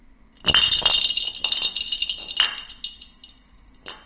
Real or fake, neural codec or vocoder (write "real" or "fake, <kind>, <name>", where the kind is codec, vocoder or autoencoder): real